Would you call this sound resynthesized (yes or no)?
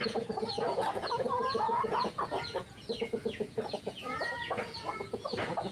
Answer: yes